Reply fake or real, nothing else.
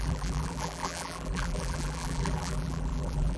fake